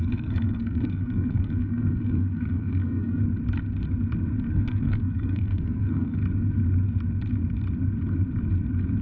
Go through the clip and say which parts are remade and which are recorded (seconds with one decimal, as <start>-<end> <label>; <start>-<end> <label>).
0.0-3.2 remade; 3.2-4.5 recorded; 4.5-6.2 remade; 6.2-9.0 recorded